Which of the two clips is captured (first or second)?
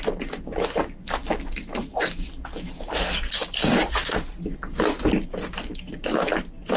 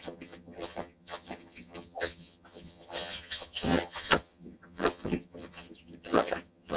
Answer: first